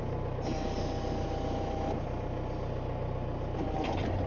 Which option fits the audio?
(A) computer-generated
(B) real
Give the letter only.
B